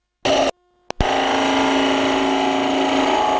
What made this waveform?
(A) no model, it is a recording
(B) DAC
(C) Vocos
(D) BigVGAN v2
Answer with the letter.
A